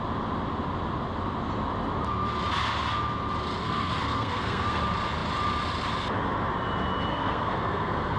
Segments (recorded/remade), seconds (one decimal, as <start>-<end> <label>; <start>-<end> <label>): 0.0-3.6 recorded; 3.6-4.8 remade; 4.8-7.1 recorded; 7.1-8.2 remade